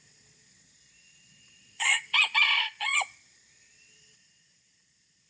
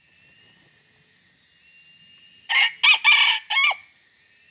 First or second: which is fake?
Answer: first